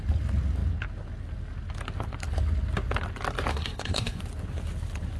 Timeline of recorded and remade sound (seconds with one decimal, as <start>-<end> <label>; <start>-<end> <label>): 0.0-3.5 recorded; 3.5-4.2 remade; 4.2-5.2 recorded